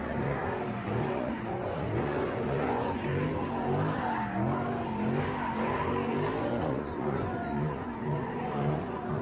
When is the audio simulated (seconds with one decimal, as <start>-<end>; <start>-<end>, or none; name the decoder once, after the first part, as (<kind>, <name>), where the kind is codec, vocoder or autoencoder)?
0.0-3.1 (vocoder, Vocos); 6.4-9.2

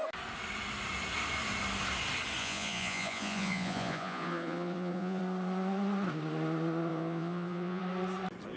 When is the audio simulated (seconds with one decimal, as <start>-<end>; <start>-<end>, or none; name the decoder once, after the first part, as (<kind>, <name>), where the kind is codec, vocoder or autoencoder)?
2.4-5.2 (vocoder, Vocos); 6.9-7.8

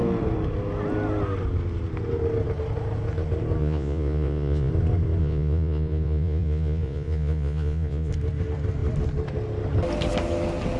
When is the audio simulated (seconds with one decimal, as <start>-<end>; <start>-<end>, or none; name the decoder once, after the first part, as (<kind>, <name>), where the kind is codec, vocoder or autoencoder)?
3.6-4.7 (vocoder, Vocos); 5.2-8.1

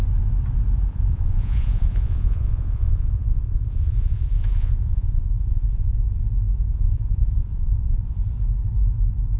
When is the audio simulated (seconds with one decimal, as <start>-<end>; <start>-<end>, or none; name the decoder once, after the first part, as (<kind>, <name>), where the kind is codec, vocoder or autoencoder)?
0.9-5.9 (vocoder, Vocos); 6.7-8.2

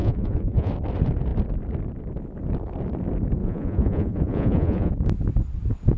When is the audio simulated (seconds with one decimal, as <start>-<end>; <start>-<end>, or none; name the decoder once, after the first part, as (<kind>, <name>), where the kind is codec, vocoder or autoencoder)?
0.0-0.7 (vocoder, Vocos); 3.4-4.9